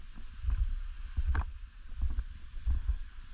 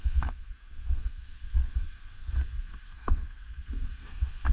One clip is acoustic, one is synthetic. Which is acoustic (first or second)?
first